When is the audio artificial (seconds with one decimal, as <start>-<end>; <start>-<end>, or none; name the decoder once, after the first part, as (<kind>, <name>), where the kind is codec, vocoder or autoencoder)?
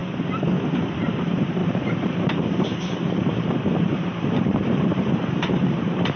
1.0-6.2 (vocoder, BigVGAN v2)